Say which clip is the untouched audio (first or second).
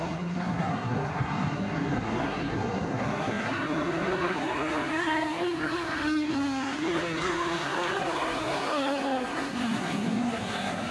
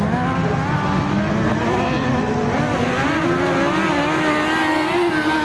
second